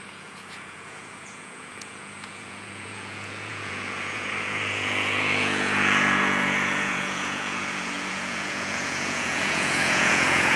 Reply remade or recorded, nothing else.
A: remade